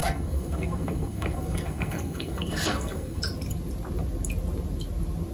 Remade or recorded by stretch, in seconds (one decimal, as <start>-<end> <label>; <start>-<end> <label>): 0.0-3.2 remade; 3.2-5.3 recorded